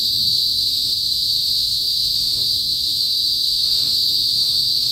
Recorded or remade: remade